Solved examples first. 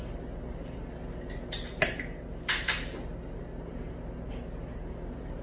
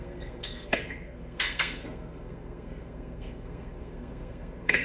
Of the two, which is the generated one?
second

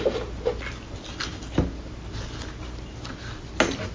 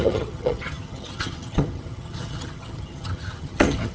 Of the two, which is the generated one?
second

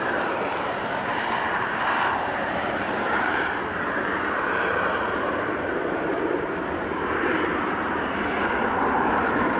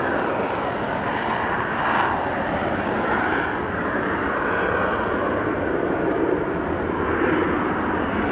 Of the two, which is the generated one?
first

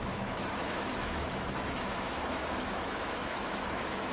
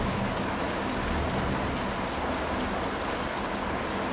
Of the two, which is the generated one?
first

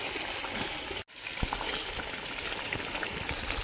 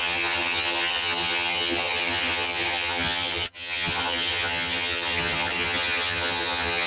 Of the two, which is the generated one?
second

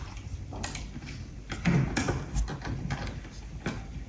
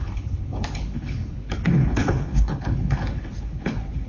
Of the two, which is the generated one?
second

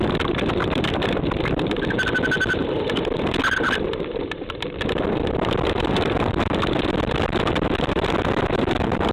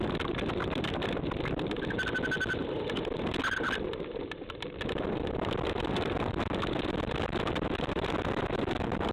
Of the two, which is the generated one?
first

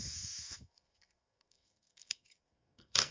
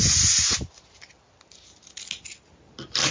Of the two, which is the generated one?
first